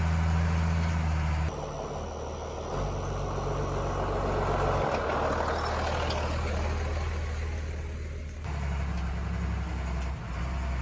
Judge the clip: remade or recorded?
recorded